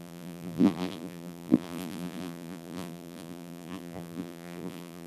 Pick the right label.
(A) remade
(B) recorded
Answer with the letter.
A